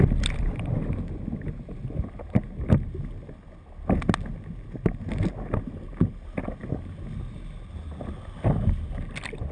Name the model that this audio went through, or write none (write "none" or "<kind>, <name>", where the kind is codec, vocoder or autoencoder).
none